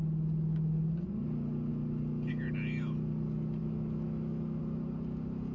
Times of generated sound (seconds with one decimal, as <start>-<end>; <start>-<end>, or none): 3.6-4.6